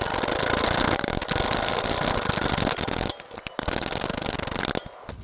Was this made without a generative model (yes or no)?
yes